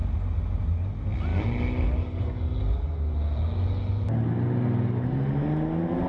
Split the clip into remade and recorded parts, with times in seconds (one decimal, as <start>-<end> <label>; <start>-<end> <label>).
0.0-6.1 recorded